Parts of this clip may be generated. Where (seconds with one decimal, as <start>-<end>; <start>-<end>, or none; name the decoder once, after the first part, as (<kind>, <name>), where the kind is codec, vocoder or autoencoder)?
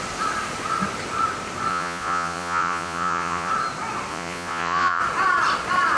1.7-3.5 (vocoder, Vocos); 4.1-5.0